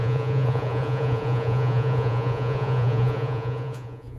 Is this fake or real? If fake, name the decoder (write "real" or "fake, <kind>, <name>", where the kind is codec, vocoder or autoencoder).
fake, vocoder, Vocos